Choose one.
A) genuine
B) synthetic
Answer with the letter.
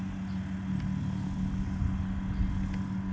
A